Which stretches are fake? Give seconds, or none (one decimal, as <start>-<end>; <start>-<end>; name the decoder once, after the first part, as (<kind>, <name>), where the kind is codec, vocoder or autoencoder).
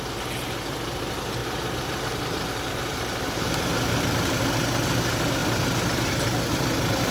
1.4-4.4 (vocoder, BigVGAN v2)